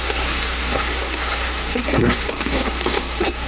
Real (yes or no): no